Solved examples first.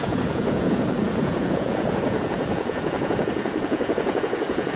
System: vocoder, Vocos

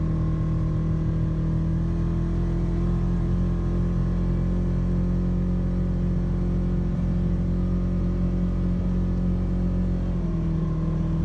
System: none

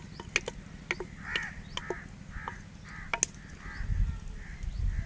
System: none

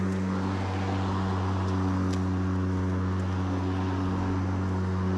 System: none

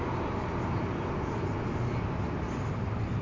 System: none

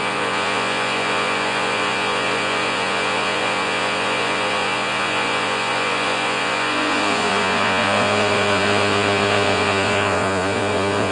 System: vocoder, Vocos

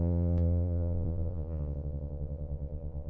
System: vocoder, Vocos